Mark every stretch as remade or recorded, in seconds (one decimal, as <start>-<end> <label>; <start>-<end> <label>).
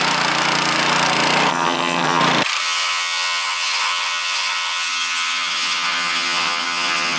0.0-1.5 recorded; 1.5-2.2 remade; 2.2-2.6 recorded; 2.6-7.2 remade